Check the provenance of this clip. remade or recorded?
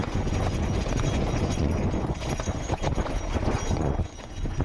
remade